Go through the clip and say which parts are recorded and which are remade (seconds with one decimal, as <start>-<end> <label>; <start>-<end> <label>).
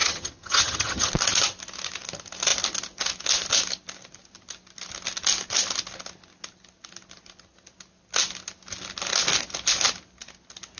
0.0-1.1 remade; 1.1-10.8 recorded